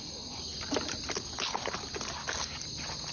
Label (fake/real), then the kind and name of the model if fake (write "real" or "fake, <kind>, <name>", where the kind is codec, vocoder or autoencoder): real